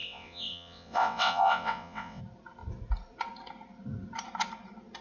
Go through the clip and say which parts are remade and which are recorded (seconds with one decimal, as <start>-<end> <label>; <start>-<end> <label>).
0.0-2.2 remade; 2.2-5.0 recorded